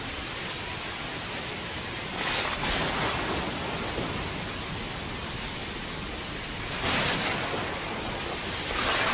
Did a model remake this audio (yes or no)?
no